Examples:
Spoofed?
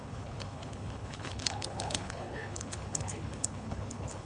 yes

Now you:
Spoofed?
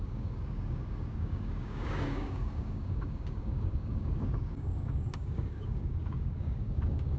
yes